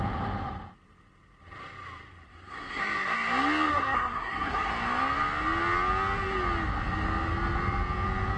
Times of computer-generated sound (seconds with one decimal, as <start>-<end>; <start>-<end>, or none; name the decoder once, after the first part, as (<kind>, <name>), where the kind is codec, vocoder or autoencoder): 2.3-2.8 (codec, SNAC); 3.7-4.7